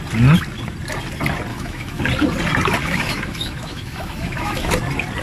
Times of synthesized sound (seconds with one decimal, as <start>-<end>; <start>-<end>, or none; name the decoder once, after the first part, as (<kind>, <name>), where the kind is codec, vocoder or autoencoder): 1.5-2.0 (autoencoder, DAC-VAE); 2.8-4.7